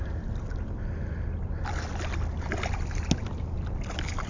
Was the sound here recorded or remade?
recorded